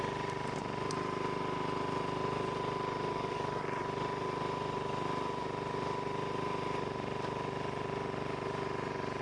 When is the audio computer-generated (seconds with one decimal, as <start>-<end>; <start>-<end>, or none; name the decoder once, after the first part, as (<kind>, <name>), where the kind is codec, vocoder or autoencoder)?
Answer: 3.1-3.8 (codec, DAC)